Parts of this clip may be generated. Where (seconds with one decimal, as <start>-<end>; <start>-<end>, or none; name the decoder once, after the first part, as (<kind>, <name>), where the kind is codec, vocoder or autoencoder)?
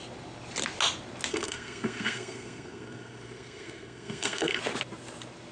1.3-4.6 (codec, SNAC)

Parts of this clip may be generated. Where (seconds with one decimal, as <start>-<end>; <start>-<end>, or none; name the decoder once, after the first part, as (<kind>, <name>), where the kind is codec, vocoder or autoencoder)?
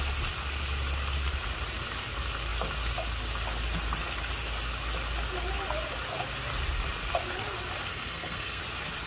7.9-8.6 (codec, SNAC)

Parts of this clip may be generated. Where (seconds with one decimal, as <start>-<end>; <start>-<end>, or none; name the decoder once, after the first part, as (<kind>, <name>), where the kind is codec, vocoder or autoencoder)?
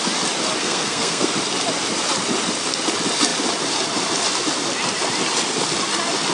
0.6-1.3 (codec, SNAC)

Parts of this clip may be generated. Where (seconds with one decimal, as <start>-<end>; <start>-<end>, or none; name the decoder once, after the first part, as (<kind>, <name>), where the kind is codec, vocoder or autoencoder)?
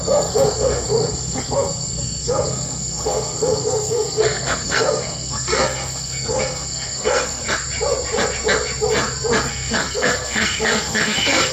0.0-7.4 (codec, SNAC); 9.5-11.5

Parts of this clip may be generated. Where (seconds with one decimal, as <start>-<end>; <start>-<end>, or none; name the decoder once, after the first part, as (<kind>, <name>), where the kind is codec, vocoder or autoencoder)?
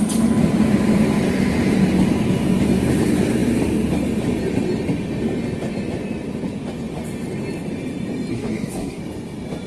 8.3-9.0 (codec, SNAC)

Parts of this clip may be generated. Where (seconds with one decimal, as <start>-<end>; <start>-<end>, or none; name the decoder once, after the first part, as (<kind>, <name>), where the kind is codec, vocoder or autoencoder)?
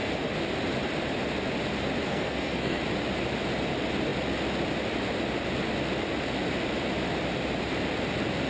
2.0-2.8 (codec, SNAC)